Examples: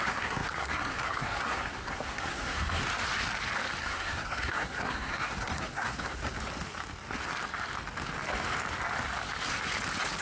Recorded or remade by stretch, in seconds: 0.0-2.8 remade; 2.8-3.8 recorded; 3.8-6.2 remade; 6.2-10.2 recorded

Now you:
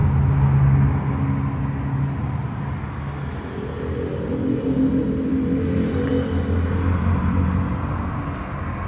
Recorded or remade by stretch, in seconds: 0.0-8.9 recorded

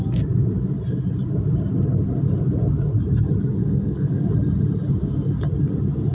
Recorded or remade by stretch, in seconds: 0.0-3.6 recorded; 3.6-4.1 remade; 4.1-6.1 recorded

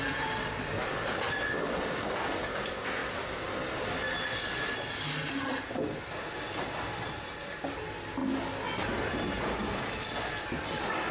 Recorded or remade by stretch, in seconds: 0.0-11.1 recorded